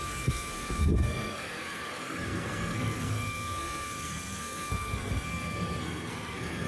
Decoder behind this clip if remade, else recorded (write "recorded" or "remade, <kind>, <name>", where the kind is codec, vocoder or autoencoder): remade, codec, SNAC